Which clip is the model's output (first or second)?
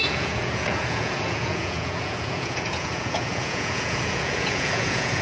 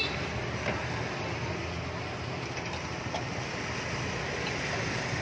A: first